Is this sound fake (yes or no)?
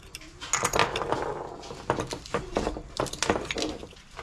no